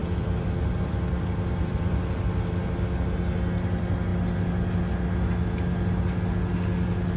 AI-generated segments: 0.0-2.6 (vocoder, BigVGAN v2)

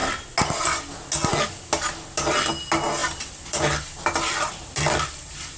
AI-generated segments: 3.0-5.6 (vocoder, BigVGAN v2)